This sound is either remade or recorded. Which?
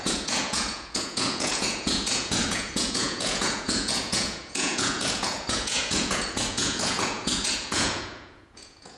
remade